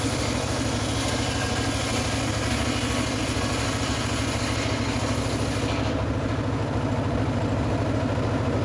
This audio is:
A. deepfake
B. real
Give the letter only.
B